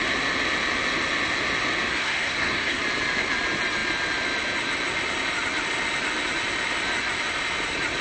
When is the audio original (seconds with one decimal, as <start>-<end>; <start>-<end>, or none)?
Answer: 0.0-1.9; 2.8-8.0